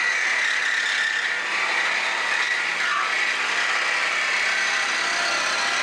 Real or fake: real